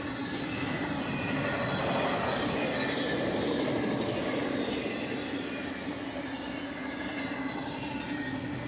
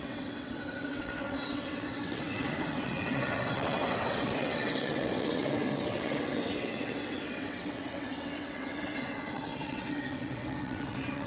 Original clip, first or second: first